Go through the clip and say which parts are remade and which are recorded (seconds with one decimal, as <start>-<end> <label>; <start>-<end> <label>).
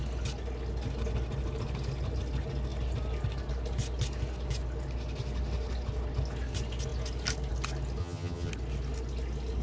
0.0-8.0 recorded; 8.0-8.5 remade; 8.5-9.6 recorded